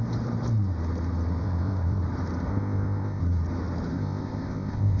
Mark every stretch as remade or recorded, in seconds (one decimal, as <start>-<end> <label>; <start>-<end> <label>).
0.0-1.4 recorded; 1.4-2.0 remade; 2.0-2.5 recorded; 2.5-3.2 remade; 3.2-3.9 recorded; 3.9-5.0 remade